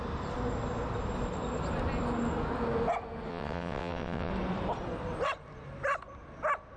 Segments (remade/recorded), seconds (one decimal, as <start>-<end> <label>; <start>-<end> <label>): 0.0-3.3 recorded; 3.3-4.3 remade; 4.3-6.8 recorded